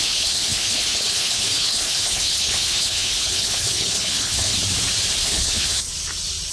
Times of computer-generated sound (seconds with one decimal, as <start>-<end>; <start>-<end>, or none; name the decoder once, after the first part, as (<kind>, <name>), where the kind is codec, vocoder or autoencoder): 0.0-4.5 (codec, HILCodec); 5.2-5.9